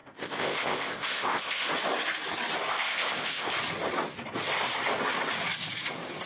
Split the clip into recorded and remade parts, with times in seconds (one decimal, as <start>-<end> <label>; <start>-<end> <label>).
0.0-1.7 remade; 1.7-2.7 recorded; 2.7-3.5 remade; 3.5-6.3 recorded